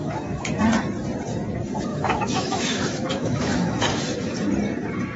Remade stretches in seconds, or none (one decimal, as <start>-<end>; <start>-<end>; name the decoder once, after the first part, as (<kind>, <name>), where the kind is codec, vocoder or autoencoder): 0.0-0.6 (autoencoder, DAC-VAE); 1.9-4.0